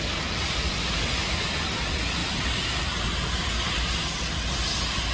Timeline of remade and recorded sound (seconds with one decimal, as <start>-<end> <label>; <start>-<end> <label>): 0.0-5.1 recorded